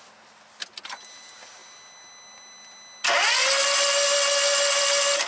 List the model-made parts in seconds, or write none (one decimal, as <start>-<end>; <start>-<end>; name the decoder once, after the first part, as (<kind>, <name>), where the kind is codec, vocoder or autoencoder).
none